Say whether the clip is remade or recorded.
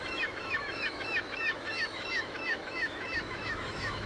remade